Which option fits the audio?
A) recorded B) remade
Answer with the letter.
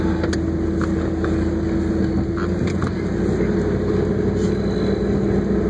A